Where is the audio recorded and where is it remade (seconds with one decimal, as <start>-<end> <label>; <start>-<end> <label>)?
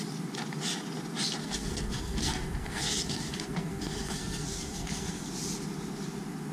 0.0-1.4 recorded; 1.4-5.3 remade; 5.3-6.5 recorded